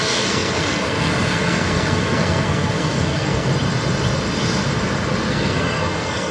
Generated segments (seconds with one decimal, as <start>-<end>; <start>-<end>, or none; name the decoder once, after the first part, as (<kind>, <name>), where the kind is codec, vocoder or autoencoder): 0.0-3.5 (codec, SNAC); 5.3-6.3